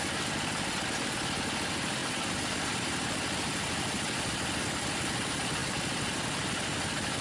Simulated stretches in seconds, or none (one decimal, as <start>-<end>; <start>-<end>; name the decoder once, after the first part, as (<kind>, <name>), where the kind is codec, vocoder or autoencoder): none